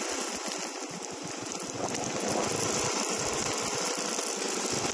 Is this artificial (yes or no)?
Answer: no